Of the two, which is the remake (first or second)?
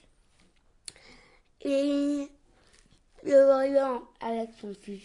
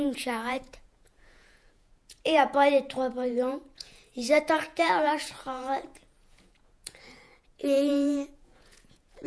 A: second